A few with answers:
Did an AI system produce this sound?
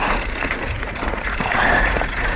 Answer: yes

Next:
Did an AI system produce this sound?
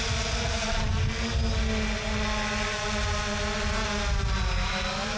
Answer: no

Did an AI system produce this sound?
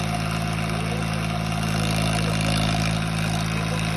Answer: no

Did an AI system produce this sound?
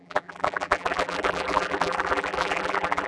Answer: yes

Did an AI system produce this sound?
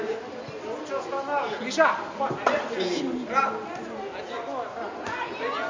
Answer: no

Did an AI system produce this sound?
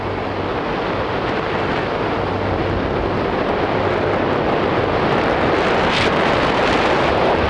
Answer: no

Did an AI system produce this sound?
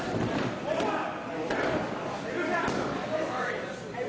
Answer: no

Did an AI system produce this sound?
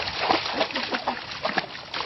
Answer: no